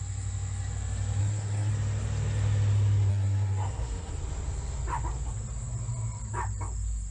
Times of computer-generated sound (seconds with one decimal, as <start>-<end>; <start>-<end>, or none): 1.2-1.7; 3.1-4.1